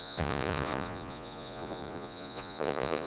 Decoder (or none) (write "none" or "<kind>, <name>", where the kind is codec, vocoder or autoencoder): vocoder, Vocos